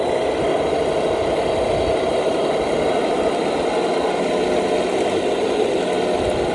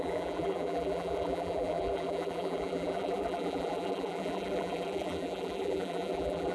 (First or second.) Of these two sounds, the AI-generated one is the second